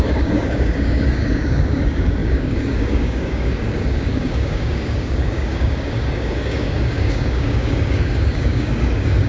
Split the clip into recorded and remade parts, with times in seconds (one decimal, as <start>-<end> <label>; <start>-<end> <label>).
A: 0.0-9.3 remade